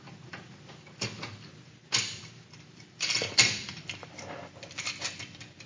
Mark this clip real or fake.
real